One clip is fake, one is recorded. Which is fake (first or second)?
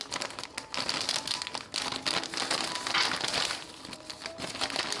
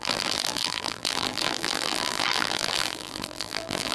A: second